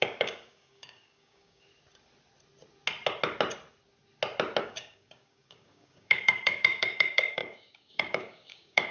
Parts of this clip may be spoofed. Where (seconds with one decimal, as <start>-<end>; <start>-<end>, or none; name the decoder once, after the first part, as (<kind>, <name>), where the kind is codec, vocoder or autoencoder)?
0.0-1.7 (codec, DAC); 4.6-8.9